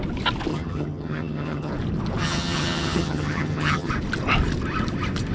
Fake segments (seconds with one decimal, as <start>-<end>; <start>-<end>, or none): 0.5-1.7; 2.2-3.9